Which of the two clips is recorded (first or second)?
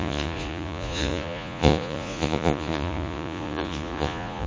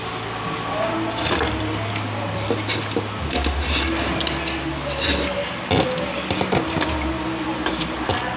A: second